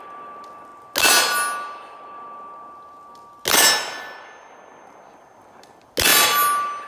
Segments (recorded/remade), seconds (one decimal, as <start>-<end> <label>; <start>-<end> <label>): 0.0-6.9 recorded